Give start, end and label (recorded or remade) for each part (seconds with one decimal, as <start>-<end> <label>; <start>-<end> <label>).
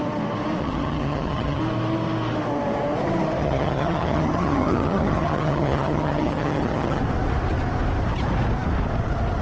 0.0-0.6 recorded; 0.6-1.6 remade; 1.6-3.4 recorded; 3.4-7.0 remade; 7.0-9.4 recorded